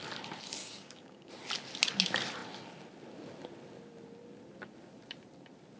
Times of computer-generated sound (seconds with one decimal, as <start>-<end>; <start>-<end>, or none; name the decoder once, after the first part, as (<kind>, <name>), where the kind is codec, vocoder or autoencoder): 0.6-1.3 (codec, DAC)